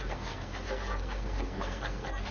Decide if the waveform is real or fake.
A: fake